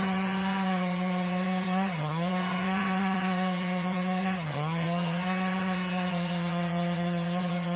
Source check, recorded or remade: remade